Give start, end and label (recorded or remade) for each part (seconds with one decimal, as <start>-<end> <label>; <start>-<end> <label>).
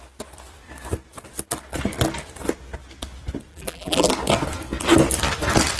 0.0-3.5 recorded; 3.5-4.1 remade; 4.1-5.8 recorded